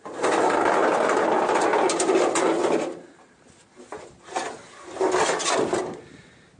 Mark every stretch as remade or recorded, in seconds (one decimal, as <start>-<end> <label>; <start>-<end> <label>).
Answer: 0.0-6.6 recorded